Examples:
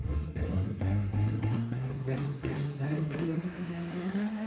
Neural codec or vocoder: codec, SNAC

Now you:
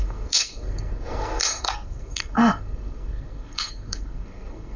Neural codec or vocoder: codec, SNAC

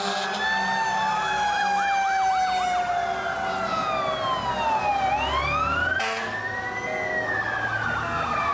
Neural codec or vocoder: none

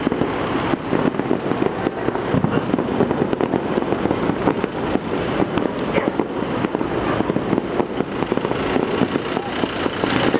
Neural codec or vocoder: none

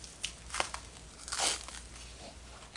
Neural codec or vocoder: none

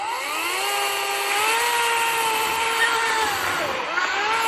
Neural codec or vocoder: none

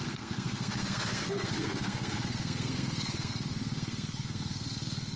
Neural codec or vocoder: codec, SNAC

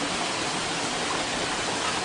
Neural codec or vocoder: none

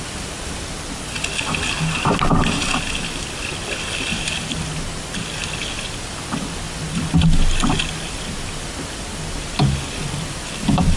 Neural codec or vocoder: none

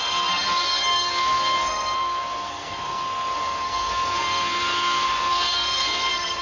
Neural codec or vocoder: codec, SNAC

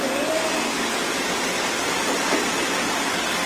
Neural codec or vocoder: none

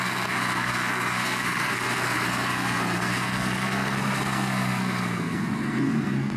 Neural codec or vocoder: codec, SNAC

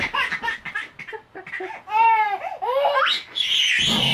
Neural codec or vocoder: none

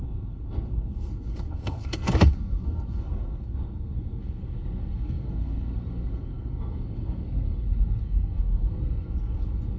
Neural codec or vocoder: codec, SNAC